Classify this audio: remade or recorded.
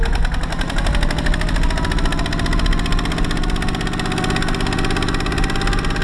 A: recorded